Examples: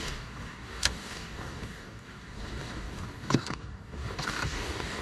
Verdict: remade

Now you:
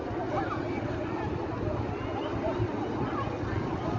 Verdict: recorded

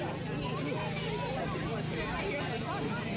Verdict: recorded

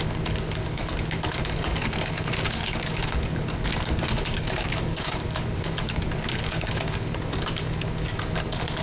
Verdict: remade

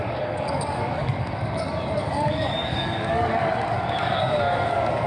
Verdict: remade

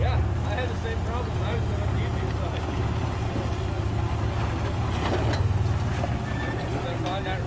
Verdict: recorded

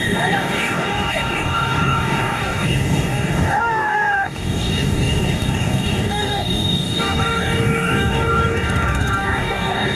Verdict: remade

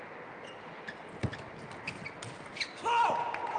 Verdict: recorded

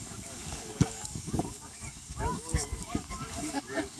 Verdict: remade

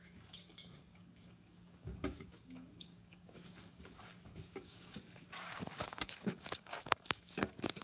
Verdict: remade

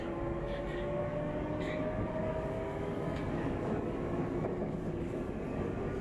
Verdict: remade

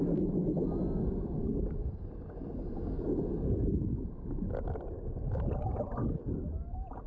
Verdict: recorded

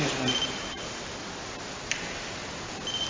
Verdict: recorded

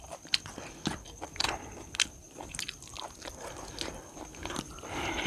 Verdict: recorded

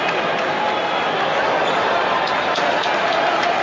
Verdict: recorded